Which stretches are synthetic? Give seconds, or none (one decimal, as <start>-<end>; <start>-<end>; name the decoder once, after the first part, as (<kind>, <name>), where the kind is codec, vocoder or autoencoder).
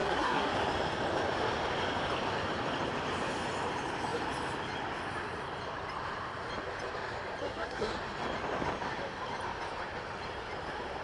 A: 0.0-0.5 (codec, SNAC); 7.4-7.9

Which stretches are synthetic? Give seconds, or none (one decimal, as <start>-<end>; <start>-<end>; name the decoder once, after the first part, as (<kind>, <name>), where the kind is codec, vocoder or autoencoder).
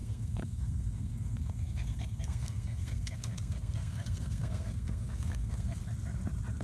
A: 0.0-5.8 (codec, SNAC)